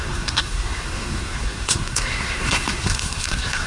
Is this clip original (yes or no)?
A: no